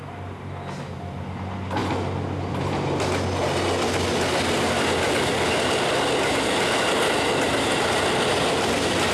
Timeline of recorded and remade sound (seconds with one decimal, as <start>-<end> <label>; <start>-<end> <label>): 0.0-9.1 recorded